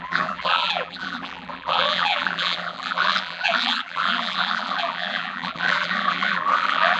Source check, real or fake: fake